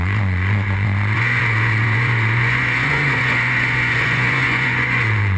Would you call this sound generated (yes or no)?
yes